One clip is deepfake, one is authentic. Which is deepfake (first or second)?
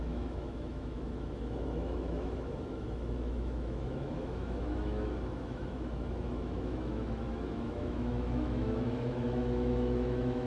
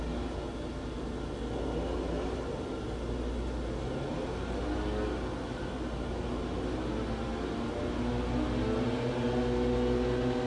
first